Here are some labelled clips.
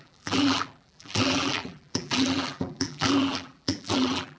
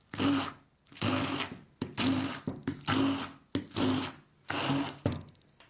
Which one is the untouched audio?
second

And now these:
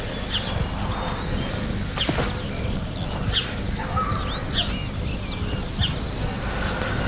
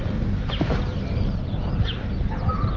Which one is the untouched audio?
first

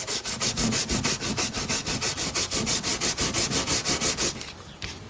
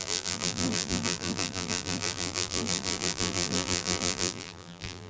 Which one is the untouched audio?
first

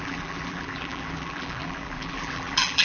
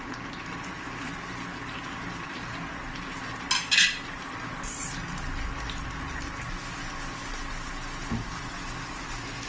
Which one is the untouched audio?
second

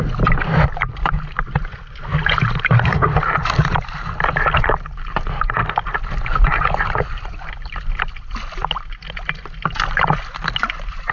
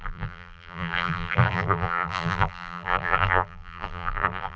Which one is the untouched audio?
first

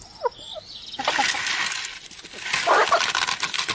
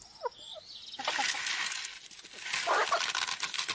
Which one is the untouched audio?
second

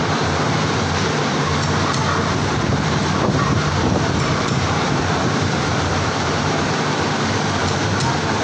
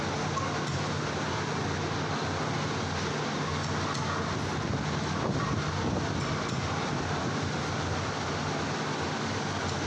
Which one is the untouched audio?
second